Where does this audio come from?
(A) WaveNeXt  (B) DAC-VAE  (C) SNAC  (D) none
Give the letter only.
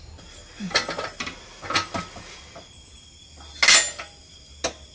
D